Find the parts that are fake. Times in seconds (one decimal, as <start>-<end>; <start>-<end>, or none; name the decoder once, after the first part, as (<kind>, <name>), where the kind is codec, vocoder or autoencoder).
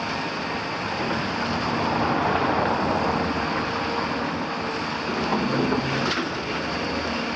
none